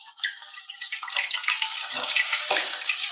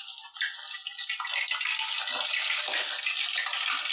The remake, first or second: first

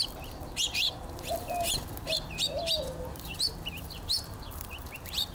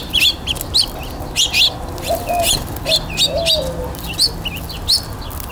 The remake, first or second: first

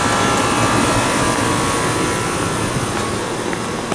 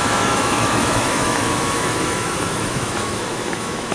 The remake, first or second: second